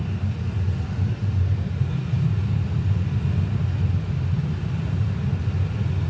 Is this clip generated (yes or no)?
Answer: no